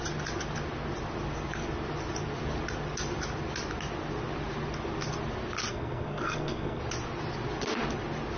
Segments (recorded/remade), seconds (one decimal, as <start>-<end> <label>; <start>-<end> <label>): 0.0-5.7 recorded; 5.7-6.8 remade; 6.8-8.4 recorded